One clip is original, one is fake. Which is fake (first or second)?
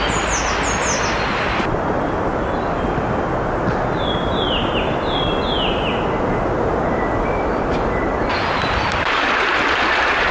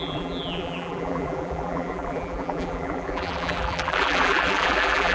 second